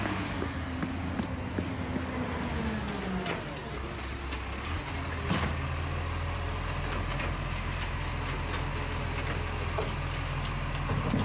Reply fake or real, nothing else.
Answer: real